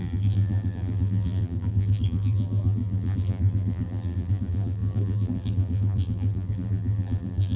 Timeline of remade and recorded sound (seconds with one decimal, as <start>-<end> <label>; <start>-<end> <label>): 0.0-7.6 remade

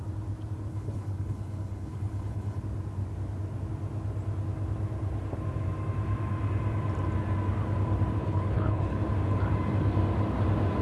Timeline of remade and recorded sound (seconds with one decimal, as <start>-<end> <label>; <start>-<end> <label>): 0.0-0.7 recorded; 0.7-2.6 remade; 2.6-8.2 recorded; 8.2-9.0 remade; 9.0-10.8 recorded

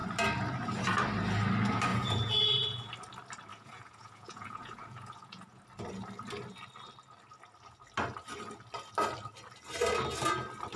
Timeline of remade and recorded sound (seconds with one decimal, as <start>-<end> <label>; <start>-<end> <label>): 0.0-1.9 recorded; 1.9-2.9 remade; 2.9-3.5 recorded; 3.5-5.6 remade; 5.6-10.8 recorded

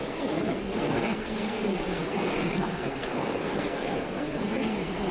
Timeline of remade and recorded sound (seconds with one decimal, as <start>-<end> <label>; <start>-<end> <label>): 0.0-5.1 remade

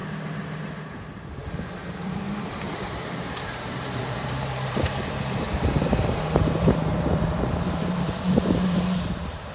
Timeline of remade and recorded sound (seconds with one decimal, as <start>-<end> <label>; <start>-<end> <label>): 0.0-1.4 recorded; 1.4-9.5 remade